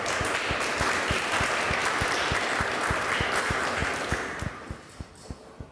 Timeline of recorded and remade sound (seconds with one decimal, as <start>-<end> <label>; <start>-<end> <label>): 0.0-3.8 recorded; 3.8-4.7 remade; 4.7-5.7 recorded